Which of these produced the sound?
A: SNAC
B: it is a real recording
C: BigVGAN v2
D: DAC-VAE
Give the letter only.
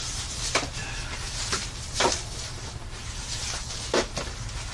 B